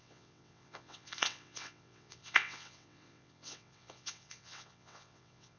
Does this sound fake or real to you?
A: fake